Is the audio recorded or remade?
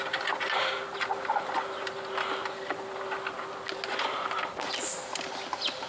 recorded